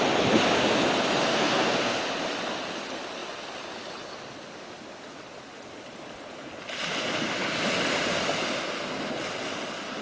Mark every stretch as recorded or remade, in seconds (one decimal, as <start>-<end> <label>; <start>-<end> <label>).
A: 0.0-1.3 recorded; 1.3-2.0 remade; 2.0-10.0 recorded